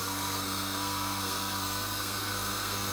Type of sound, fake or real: fake